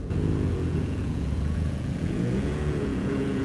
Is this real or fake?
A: fake